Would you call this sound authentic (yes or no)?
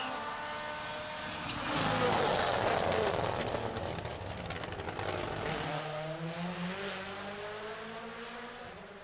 yes